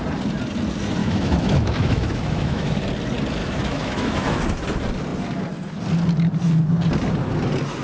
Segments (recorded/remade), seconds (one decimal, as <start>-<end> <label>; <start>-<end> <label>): 0.0-1.0 recorded; 1.0-2.8 remade; 2.8-3.4 recorded; 3.4-4.4 remade; 4.4-7.8 recorded